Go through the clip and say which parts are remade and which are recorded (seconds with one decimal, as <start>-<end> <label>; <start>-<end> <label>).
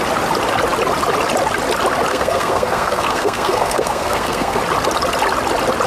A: 0.0-2.1 recorded; 2.1-4.6 remade; 4.6-5.9 recorded